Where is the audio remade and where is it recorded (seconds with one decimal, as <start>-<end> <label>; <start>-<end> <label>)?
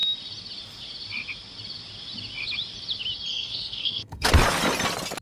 0.0-3.3 recorded; 3.3-4.3 remade; 4.3-5.2 recorded